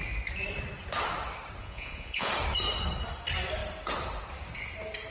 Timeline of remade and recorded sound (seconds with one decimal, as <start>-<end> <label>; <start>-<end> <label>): 0.0-1.6 recorded; 1.6-2.3 remade; 2.3-5.1 recorded